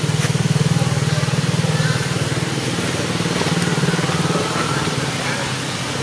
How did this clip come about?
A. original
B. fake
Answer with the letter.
A